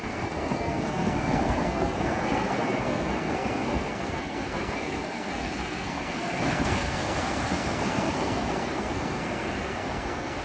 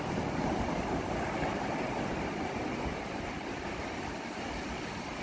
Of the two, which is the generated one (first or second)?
first